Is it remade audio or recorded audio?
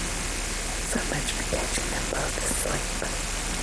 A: recorded